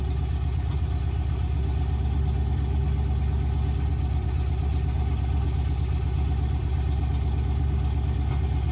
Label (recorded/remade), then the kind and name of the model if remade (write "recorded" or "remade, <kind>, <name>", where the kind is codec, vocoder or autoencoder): recorded